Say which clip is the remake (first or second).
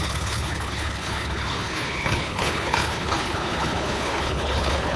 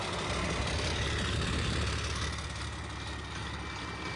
first